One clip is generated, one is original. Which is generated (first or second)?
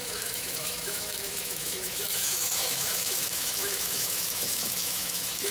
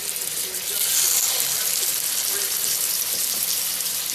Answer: first